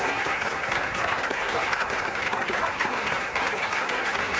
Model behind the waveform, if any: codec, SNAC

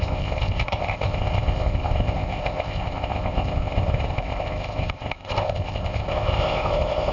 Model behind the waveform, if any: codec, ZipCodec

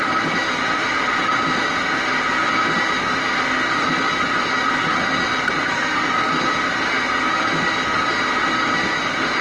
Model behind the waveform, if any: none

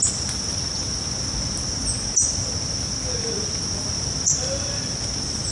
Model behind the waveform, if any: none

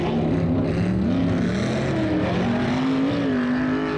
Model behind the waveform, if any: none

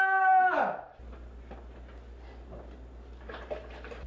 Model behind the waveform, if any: none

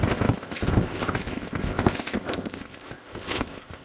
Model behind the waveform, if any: codec, ZipCodec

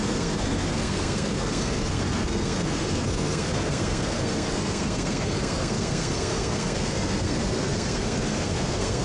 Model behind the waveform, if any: codec, SNAC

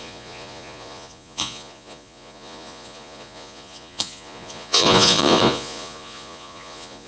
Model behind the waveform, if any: vocoder, Vocos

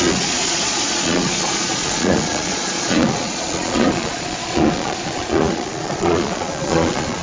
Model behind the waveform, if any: vocoder, Vocos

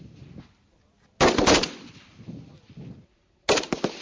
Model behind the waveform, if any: none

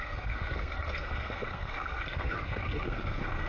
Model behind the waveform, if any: codec, SNAC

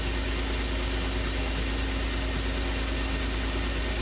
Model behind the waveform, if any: none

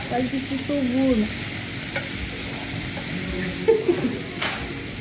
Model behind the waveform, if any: none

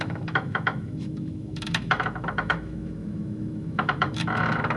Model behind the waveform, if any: autoencoder, DAC-VAE